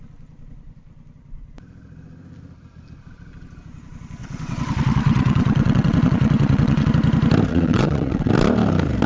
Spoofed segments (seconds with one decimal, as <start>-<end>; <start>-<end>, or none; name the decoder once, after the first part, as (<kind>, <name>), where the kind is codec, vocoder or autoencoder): 4.2-6.9 (vocoder, WaveNeXt); 7.5-8.3